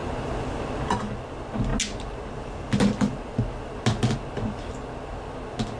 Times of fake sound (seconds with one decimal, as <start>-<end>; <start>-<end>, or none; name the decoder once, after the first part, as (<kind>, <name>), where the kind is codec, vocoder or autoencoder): none